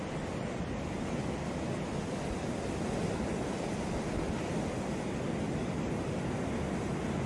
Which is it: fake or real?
real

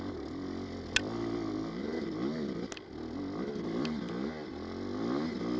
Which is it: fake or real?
real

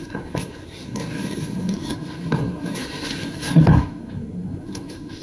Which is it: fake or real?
fake